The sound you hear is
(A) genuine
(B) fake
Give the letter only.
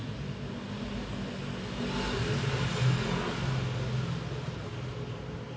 A